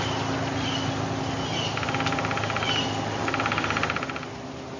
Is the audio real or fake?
real